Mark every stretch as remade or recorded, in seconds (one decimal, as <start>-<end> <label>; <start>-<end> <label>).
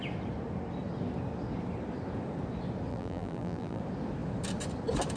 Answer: 0.0-2.9 recorded; 2.9-3.8 remade; 3.8-5.2 recorded